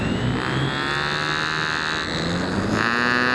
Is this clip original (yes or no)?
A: yes